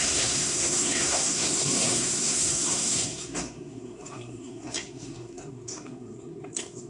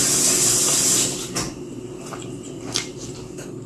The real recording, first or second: second